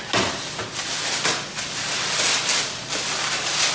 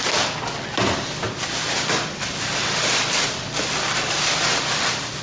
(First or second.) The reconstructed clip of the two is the second